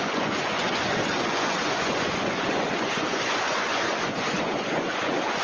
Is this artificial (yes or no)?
yes